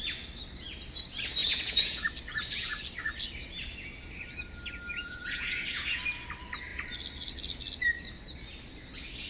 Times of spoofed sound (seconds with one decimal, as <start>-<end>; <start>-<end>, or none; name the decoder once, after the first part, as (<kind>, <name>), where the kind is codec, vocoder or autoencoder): 1.4-2.1 (vocoder, Vocos); 5.0-6.0